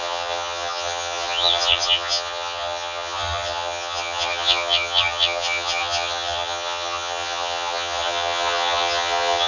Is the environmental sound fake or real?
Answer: fake